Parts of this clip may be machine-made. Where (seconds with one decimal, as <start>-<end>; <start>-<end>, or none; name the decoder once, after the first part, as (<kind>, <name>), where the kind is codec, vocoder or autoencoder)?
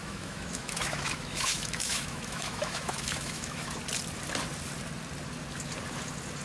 0.0-3.8 (autoencoder, DAC-VAE)